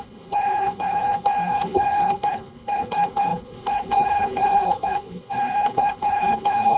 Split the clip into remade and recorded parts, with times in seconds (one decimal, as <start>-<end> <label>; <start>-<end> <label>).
0.0-6.8 remade

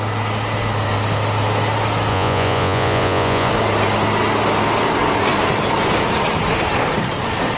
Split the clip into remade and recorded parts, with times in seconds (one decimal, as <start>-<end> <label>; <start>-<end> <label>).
0.0-2.1 recorded; 2.1-3.5 remade; 3.5-7.6 recorded